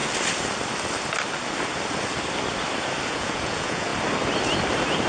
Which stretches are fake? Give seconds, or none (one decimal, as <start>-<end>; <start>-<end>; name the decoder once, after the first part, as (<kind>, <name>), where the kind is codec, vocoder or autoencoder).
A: 3.1-3.9 (vocoder, Vocos)